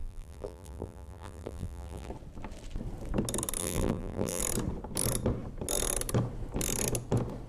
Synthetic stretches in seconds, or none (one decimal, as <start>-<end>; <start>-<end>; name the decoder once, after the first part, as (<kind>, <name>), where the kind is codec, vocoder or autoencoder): 0.0-2.1 (vocoder, BigVGAN v2); 3.6-4.4